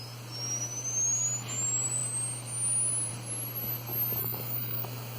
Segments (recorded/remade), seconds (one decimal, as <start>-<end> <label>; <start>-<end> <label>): 0.0-4.2 recorded; 4.2-5.2 remade